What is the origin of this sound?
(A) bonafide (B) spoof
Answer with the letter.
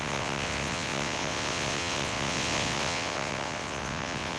B